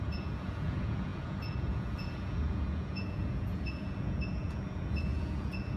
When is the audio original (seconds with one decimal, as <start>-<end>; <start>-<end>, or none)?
none